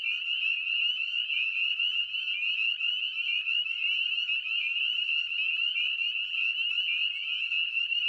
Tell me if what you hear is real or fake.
real